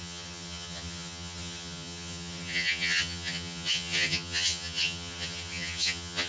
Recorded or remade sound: remade